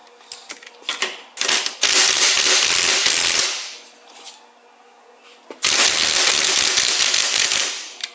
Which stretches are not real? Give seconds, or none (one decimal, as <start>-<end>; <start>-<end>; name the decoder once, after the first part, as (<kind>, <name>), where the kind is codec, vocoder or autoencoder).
none